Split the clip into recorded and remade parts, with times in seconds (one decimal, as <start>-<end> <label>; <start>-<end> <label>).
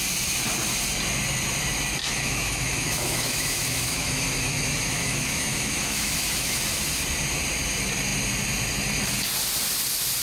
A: 0.0-2.0 recorded; 2.0-6.6 remade; 6.6-10.2 recorded